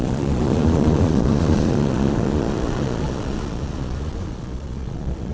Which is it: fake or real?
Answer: fake